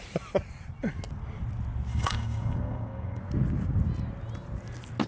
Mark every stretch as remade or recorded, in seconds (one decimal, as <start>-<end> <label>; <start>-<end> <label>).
0.0-1.9 recorded; 1.9-3.2 remade; 3.2-5.1 recorded